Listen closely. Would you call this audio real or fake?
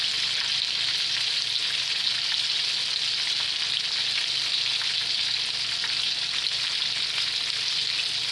real